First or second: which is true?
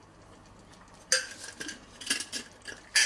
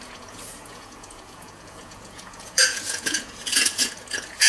first